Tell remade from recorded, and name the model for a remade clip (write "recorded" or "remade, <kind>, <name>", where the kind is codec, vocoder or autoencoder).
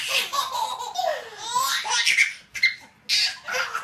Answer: recorded